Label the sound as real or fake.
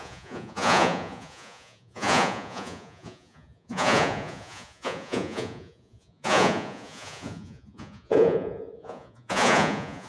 fake